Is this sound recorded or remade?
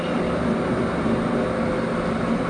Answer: recorded